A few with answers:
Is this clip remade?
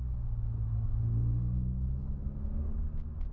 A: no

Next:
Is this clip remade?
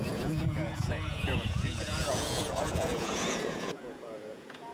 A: yes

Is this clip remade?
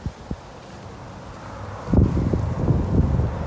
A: no